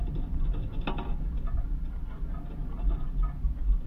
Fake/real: real